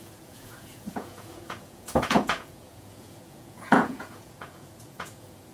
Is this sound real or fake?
fake